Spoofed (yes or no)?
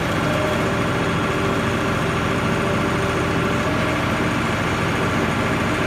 no